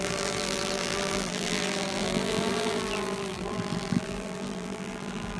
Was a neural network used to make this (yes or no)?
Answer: yes